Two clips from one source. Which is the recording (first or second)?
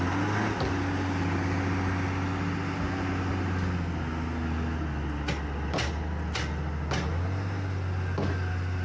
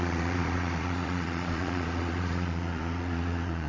first